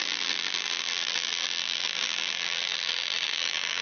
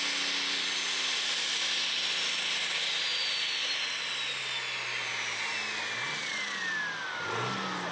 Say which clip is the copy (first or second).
first